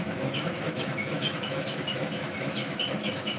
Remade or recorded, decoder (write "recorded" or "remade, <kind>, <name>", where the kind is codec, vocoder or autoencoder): remade, autoencoder, DAC-VAE